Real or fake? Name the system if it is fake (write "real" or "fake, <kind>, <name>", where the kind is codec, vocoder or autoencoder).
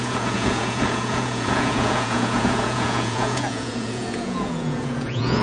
fake, vocoder, Vocos